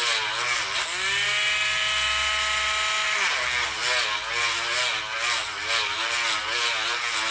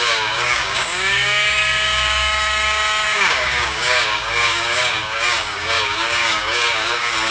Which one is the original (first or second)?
first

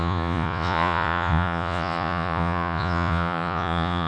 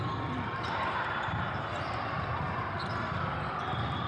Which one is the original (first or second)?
second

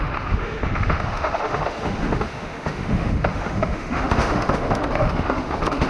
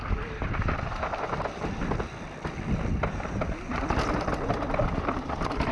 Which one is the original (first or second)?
second